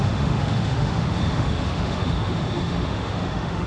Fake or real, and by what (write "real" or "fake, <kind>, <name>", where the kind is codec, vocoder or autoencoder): fake, autoencoder, DAC-VAE